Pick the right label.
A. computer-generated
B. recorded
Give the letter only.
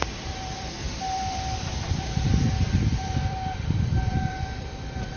A